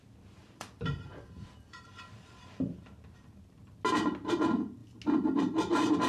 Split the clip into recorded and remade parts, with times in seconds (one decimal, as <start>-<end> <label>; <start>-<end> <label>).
0.0-0.4 recorded; 0.4-2.8 remade; 2.8-6.1 recorded